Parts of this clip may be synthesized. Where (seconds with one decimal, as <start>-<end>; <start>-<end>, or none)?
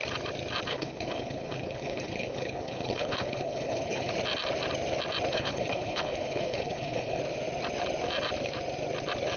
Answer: 0.7-4.1; 5.3-7.2